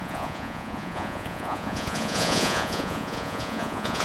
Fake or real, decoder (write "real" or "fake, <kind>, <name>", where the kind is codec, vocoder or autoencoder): fake, vocoder, Vocos